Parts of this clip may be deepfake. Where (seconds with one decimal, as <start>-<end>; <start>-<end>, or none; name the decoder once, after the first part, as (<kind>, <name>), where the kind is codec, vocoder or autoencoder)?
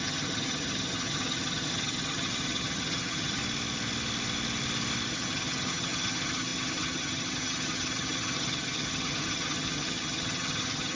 0.0-3.4 (vocoder, HiFi-GAN); 5.1-10.9